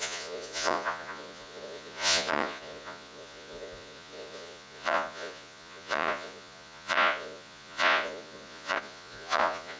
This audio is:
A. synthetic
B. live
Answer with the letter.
A